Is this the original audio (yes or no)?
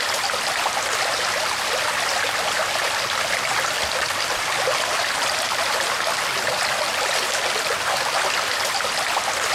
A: yes